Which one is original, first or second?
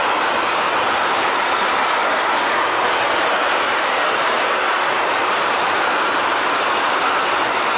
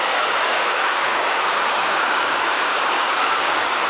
first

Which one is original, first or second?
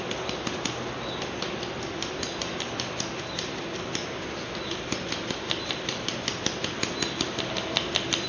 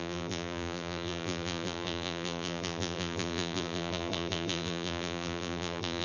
first